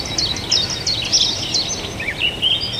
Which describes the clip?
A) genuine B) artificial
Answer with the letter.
A